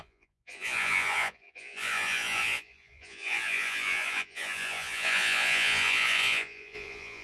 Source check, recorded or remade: remade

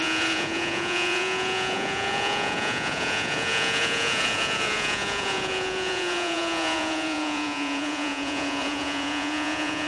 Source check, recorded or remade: remade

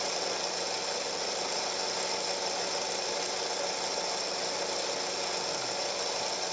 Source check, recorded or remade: recorded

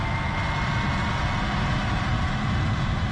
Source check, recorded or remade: recorded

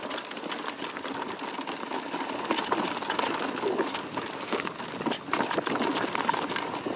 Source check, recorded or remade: recorded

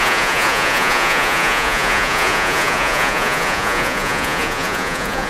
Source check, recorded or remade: remade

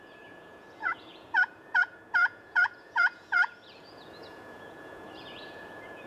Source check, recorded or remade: remade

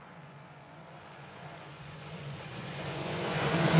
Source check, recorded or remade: remade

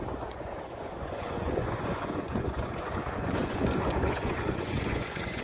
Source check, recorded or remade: remade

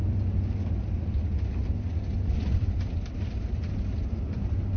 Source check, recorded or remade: recorded